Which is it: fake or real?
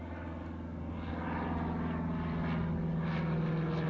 real